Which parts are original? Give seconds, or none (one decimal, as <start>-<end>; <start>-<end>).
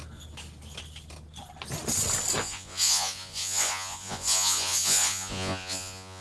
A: 0.0-2.4